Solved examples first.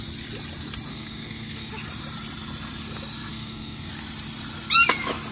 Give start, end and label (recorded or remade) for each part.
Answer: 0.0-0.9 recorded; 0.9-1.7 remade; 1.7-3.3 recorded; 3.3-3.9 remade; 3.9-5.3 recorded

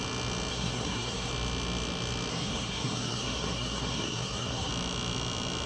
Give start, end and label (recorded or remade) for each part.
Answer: 0.0-0.5 recorded; 0.5-1.3 remade; 1.3-2.3 recorded; 2.3-4.7 remade; 4.7-5.7 recorded

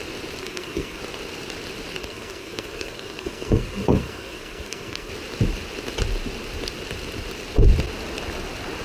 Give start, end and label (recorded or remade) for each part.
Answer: 0.0-0.4 recorded; 0.4-1.0 remade; 1.0-2.0 recorded; 2.0-5.1 remade; 5.1-8.8 recorded